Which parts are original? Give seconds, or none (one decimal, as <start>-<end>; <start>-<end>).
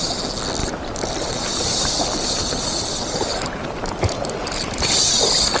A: 0.0-0.6; 2.0-2.4